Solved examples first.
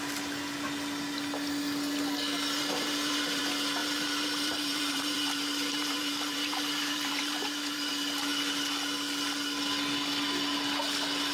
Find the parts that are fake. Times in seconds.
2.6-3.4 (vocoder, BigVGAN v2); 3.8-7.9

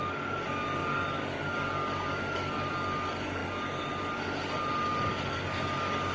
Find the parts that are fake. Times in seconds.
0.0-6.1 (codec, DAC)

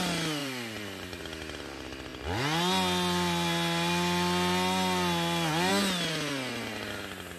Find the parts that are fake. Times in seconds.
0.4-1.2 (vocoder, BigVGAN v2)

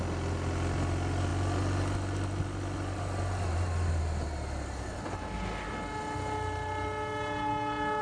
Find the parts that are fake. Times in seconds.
none

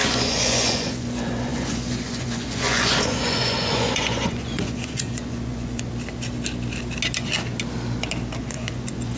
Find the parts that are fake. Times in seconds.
0.0-5.9 (vocoder, Vocos); 8.4-9.2